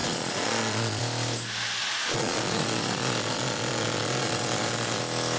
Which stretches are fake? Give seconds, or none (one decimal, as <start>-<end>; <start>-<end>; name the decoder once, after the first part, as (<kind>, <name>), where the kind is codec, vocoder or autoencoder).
0.0-1.0 (vocoder, Vocos); 1.8-5.0